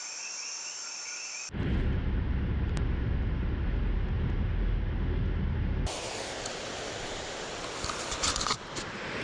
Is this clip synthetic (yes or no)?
no